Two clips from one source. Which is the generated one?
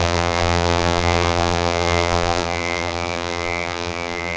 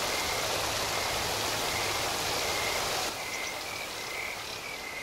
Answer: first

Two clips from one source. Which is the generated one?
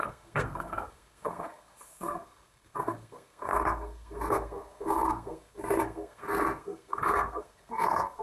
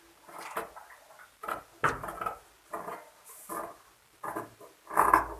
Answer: first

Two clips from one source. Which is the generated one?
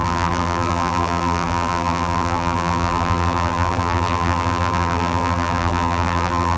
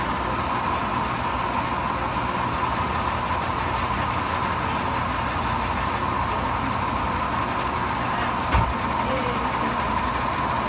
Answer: first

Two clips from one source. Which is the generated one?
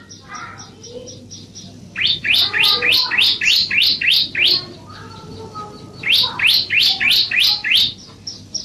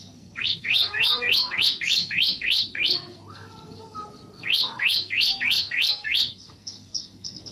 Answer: second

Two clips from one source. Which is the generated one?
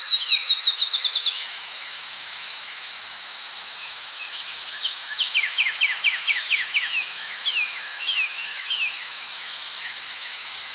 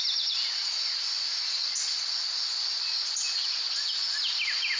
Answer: first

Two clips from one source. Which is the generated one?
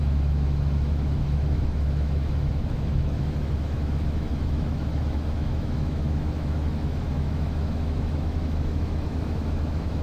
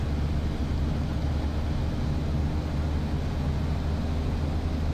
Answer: first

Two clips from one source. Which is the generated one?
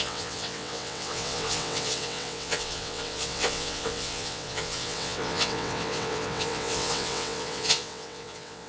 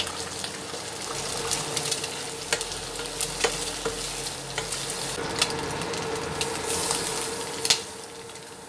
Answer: first